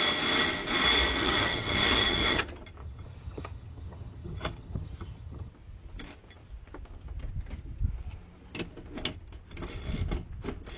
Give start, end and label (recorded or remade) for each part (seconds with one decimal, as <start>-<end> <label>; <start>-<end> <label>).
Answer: 0.0-1.2 recorded; 1.2-2.4 remade; 2.4-2.8 recorded; 2.8-5.5 remade; 5.5-10.8 recorded